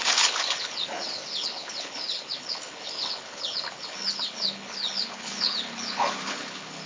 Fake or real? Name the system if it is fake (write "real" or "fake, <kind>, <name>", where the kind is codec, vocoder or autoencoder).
fake, codec, HILCodec